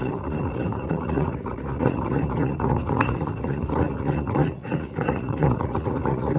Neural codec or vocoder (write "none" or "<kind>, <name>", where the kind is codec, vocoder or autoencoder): vocoder, Vocos